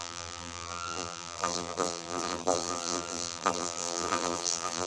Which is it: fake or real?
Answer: fake